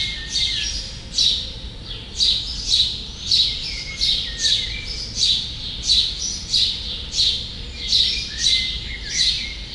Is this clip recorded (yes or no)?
yes